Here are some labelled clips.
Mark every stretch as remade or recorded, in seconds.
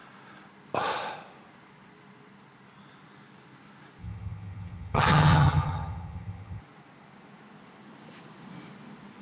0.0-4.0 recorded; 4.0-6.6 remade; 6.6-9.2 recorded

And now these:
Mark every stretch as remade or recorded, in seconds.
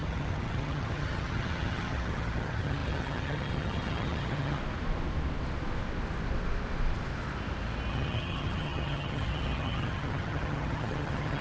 0.0-4.6 remade; 4.6-7.9 recorded; 7.9-11.4 remade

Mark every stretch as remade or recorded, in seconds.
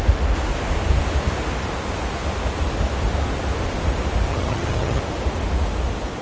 0.0-4.3 recorded; 4.3-5.0 remade; 5.0-6.2 recorded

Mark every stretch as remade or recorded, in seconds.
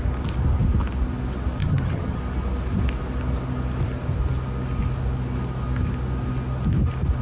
0.0-1.6 recorded; 1.6-2.2 remade; 2.2-7.2 recorded